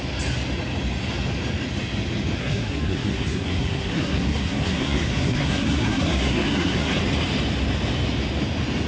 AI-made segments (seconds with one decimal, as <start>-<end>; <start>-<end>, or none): 2.4-7.0